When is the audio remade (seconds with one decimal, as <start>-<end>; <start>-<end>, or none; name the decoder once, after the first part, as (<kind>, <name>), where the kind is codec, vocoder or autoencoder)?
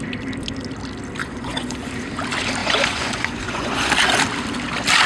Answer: 1.2-1.9 (vocoder, Vocos); 2.6-3.9